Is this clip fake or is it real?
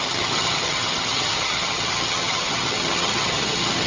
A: fake